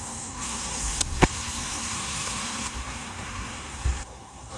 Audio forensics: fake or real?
fake